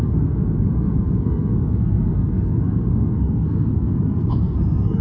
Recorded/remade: remade